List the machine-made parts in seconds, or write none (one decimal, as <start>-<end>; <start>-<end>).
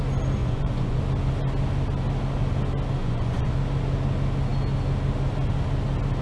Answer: 0.4-1.0; 3.0-3.5